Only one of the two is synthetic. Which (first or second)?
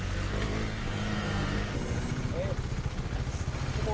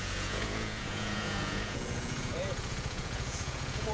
second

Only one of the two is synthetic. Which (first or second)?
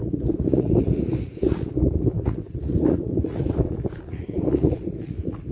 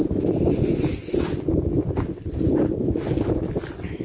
first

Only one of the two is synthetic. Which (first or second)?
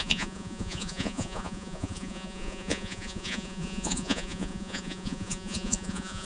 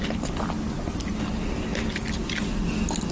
first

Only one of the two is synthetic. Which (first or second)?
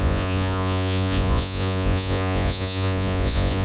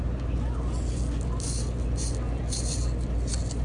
first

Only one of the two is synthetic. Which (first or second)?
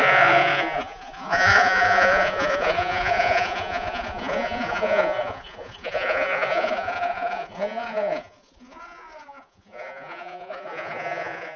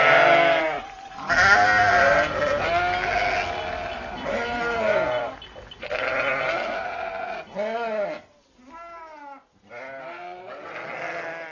first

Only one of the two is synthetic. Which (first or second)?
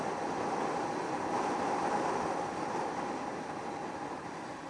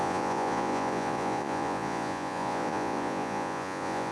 second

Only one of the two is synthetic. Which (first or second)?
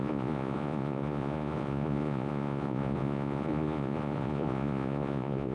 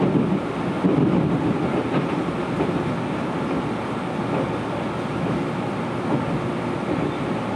first